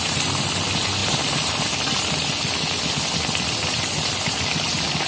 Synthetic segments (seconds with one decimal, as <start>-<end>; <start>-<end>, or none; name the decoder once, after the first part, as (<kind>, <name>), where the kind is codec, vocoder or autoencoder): none